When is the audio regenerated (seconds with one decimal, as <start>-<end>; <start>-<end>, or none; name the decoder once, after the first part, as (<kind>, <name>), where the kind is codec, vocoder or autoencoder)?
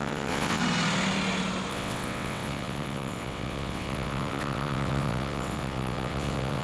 0.0-0.6 (vocoder, WaveNeXt); 1.7-6.6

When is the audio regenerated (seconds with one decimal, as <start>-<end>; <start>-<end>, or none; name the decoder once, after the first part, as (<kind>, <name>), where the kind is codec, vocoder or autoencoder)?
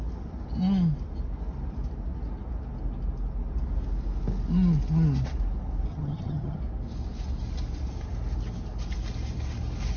5.9-6.6 (vocoder, HiFi-GAN)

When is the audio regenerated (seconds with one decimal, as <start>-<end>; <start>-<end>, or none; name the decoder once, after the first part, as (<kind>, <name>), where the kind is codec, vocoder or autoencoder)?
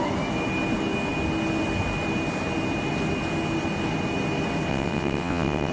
4.7-5.7 (vocoder, WaveNeXt)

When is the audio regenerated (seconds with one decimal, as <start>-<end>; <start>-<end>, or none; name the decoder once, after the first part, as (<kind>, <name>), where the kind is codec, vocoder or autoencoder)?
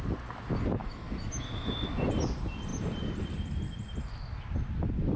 0.8-1.7 (autoencoder, DAC-VAE)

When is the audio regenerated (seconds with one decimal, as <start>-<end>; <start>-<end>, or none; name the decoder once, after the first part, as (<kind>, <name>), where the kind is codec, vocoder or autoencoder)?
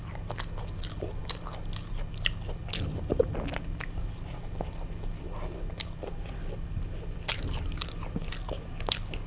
none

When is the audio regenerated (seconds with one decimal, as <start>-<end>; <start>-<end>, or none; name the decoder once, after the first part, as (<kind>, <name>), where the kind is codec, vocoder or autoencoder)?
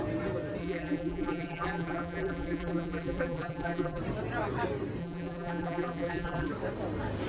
0.6-4.0 (vocoder, BigVGAN v2); 5.0-6.5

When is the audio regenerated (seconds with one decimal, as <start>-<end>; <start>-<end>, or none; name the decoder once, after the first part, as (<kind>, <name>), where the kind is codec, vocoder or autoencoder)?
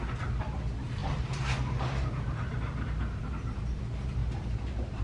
1.0-3.6 (vocoder, BigVGAN v2); 4.2-5.0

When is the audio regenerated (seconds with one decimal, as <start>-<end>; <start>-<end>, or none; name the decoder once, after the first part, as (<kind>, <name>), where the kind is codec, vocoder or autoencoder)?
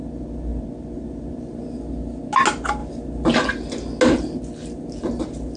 0.5-1.4 (vocoder, BigVGAN v2)